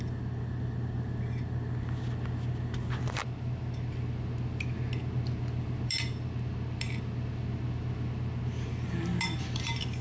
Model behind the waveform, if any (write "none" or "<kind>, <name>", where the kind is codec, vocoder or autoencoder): none